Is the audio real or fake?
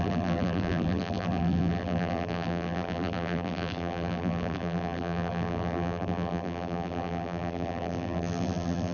fake